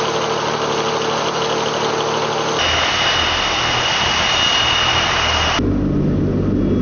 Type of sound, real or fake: real